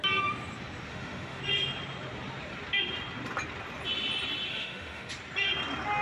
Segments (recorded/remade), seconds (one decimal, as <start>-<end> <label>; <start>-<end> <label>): 0.0-0.9 recorded; 0.9-1.4 remade; 1.4-4.5 recorded; 4.5-5.1 remade; 5.1-6.0 recorded